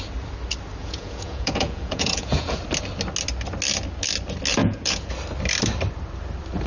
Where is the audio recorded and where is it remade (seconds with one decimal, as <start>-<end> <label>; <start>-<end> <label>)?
0.0-0.8 recorded; 0.8-2.6 remade; 2.6-4.6 recorded; 4.6-5.1 remade; 5.1-6.7 recorded